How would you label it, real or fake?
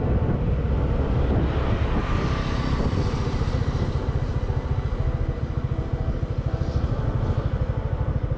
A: real